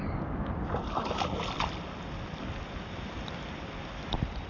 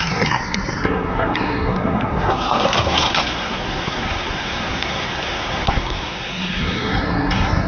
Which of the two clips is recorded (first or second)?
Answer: first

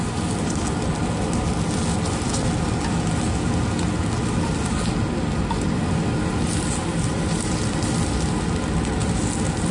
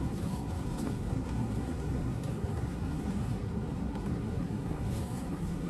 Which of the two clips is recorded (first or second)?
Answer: first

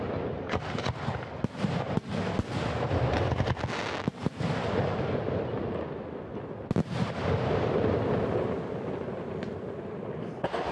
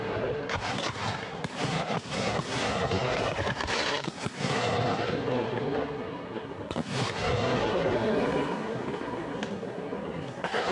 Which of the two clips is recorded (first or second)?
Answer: first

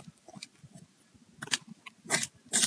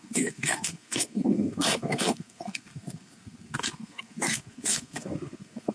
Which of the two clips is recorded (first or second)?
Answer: first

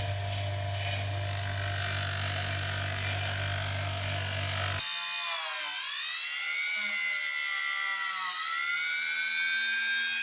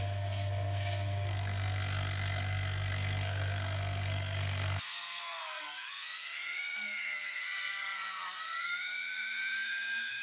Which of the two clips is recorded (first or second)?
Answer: first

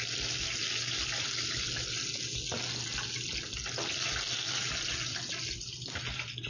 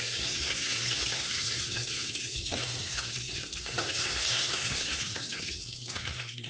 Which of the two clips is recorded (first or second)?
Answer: first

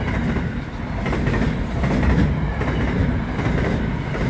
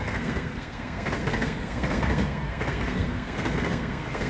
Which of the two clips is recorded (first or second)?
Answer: first